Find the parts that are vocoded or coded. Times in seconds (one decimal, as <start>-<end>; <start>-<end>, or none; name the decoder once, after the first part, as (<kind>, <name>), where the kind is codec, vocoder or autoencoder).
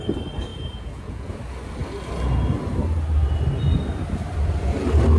0.5-1.3 (vocoder, Vocos)